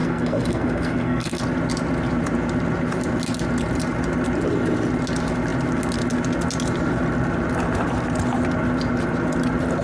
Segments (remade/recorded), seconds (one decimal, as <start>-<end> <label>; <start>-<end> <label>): 0.0-1.4 remade; 1.4-9.8 recorded